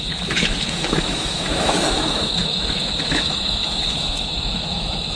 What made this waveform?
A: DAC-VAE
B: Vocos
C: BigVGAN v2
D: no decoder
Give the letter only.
A